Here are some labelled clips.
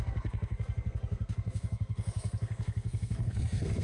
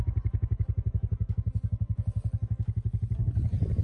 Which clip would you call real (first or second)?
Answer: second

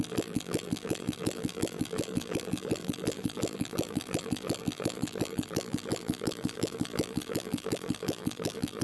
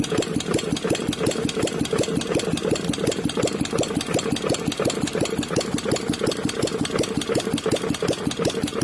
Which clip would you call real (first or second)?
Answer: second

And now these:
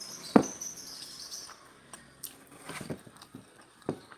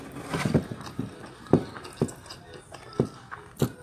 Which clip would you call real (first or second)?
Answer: second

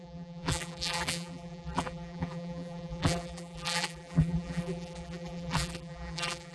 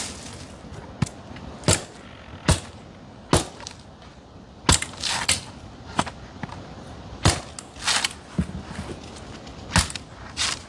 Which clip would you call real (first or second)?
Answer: second